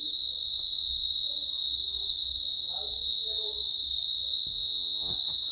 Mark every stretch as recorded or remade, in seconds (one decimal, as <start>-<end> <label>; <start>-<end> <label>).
0.0-4.5 recorded; 4.5-5.1 remade; 5.1-5.5 recorded